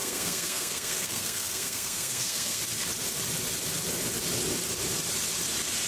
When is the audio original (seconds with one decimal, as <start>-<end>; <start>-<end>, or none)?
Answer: 2.6-5.9